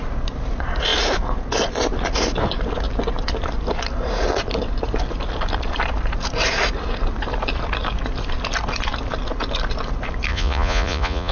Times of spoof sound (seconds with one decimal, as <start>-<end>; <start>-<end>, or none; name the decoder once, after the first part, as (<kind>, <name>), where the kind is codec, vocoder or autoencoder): 10.3-11.3 (vocoder, Vocos)